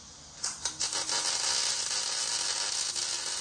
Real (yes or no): yes